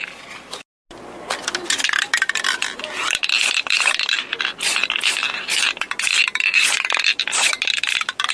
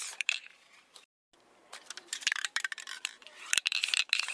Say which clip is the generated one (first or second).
second